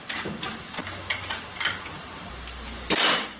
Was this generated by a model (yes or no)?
yes